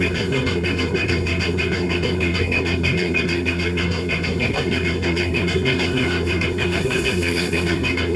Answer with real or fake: fake